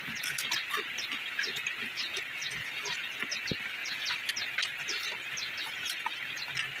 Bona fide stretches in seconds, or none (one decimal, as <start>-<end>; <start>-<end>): 0.0-6.8